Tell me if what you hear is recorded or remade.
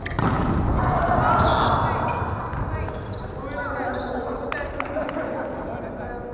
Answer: recorded